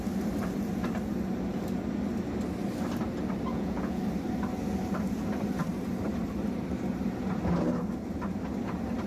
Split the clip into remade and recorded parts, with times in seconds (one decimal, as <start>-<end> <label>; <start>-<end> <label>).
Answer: 0.0-3.5 recorded; 3.5-4.0 remade; 4.0-9.1 recorded